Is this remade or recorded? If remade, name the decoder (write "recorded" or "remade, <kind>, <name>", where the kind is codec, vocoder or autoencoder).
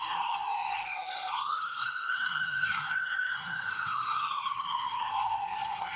remade, codec, SNAC